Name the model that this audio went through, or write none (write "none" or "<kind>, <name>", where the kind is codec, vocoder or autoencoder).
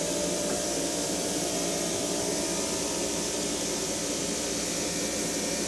vocoder, BigVGAN v2